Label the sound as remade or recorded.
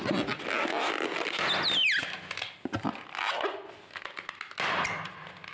recorded